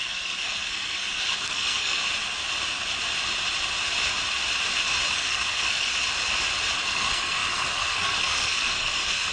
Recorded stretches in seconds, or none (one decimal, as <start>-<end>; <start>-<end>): 2.0-5.1; 5.9-6.8